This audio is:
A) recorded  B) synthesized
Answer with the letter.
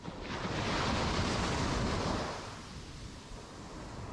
A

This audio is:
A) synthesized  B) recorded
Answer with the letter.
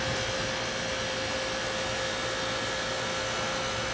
B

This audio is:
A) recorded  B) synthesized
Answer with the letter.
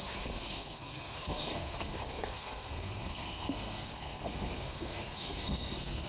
B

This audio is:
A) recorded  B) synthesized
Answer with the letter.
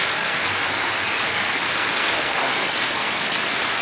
B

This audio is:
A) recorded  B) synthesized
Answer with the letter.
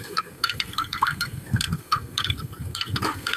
B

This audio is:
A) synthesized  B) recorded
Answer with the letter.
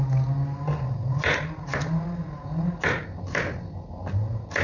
B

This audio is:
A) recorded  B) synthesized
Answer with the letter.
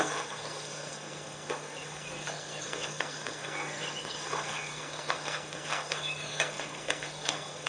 B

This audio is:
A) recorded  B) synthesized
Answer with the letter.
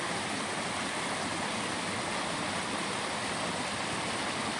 A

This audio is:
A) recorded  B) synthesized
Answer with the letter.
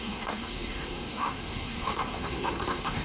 B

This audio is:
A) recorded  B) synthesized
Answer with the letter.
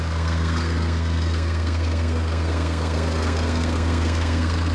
B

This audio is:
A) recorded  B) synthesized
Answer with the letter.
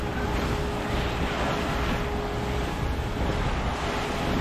A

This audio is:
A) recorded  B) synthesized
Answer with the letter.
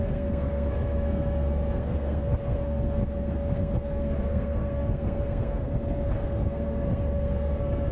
B